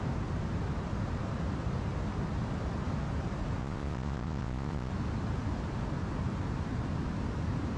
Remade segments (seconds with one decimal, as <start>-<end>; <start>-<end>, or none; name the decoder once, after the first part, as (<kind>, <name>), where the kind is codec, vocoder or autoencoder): 3.6-4.9 (vocoder, Vocos)